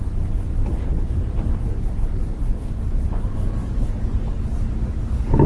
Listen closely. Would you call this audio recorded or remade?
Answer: recorded